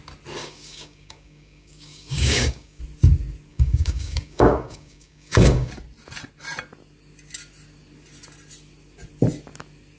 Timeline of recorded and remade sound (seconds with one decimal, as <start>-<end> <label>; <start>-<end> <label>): 0.0-0.4 recorded; 0.4-2.8 remade; 2.8-3.5 recorded; 3.5-5.7 remade; 5.7-10.0 recorded